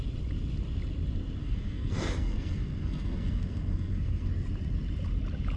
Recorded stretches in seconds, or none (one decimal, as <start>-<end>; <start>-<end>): 0.0-1.4; 4.3-5.6